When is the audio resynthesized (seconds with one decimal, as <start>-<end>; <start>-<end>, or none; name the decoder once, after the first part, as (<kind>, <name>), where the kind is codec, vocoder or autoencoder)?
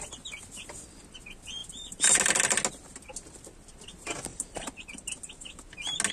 4.3-5.6 (vocoder, BigVGAN v2)